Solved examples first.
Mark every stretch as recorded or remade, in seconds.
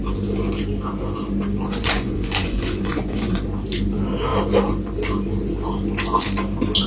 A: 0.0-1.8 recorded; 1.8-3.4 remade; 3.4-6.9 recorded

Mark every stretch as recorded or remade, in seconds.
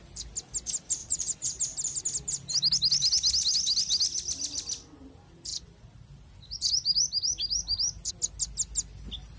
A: 0.0-1.0 recorded; 1.0-1.6 remade; 1.6-9.4 recorded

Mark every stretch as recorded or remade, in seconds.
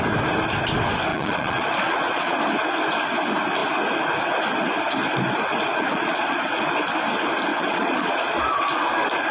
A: 0.0-1.1 recorded; 1.1-2.4 remade; 2.4-5.7 recorded; 5.7-6.6 remade; 6.6-7.5 recorded; 7.5-8.4 remade; 8.4-9.3 recorded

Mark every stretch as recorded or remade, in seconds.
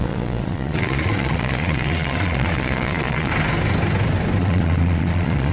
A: 0.0-3.3 remade; 3.3-4.4 recorded; 4.4-5.5 remade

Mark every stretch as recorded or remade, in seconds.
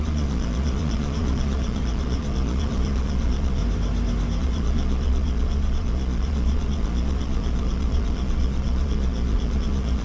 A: 0.0-3.6 remade; 3.6-4.4 recorded; 4.4-10.0 remade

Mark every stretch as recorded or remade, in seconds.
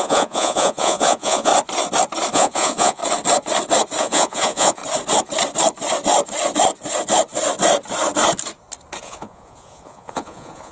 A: 0.0-1.5 remade; 1.5-2.3 recorded; 2.3-3.0 remade; 3.0-4.0 recorded; 4.0-4.8 remade; 4.8-9.0 recorded; 9.0-10.7 remade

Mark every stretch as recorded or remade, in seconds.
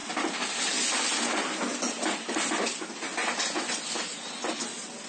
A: 0.0-5.1 recorded